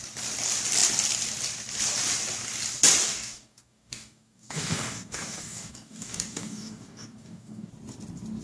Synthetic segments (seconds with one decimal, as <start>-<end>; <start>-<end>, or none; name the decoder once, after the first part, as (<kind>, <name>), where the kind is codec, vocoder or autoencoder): 3.0-7.7 (codec, DAC)